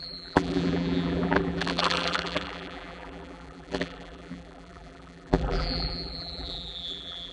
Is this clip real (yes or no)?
no